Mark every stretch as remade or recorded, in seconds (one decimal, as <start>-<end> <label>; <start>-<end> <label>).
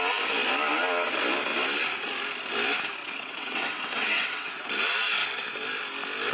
0.0-3.0 recorded; 3.0-4.7 remade; 4.7-6.3 recorded